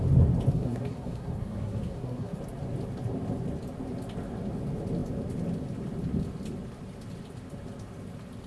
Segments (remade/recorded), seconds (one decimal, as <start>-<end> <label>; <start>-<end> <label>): 0.0-0.5 recorded; 0.5-2.4 remade; 2.4-8.5 recorded